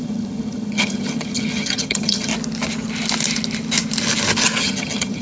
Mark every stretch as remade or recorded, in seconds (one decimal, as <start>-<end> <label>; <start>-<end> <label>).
0.0-2.3 remade; 2.3-4.6 recorded; 4.6-5.2 remade